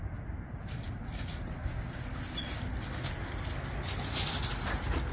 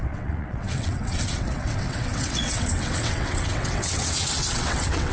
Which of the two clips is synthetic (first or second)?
second